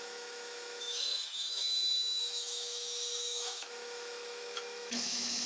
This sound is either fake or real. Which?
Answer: fake